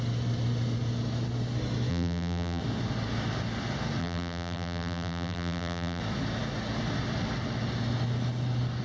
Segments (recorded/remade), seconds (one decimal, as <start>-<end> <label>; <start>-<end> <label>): 0.0-1.9 recorded; 1.9-2.6 remade; 2.6-4.0 recorded; 4.0-6.0 remade; 6.0-8.8 recorded